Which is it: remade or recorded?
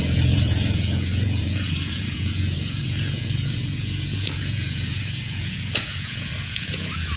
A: remade